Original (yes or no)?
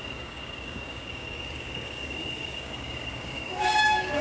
no